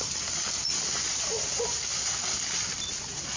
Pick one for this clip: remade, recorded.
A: recorded